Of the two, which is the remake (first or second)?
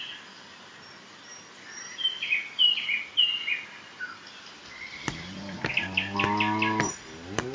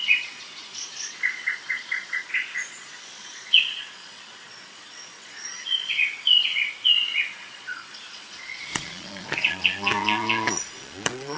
second